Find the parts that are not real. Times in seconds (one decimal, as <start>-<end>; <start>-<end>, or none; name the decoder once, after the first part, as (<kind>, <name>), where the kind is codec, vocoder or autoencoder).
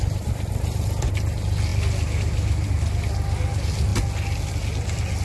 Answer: none